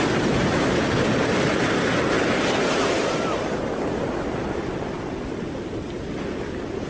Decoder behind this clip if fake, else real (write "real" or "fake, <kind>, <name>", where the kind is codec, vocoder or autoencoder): real